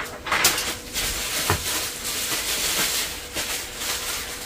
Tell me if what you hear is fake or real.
real